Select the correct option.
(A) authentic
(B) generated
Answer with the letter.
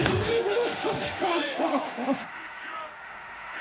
B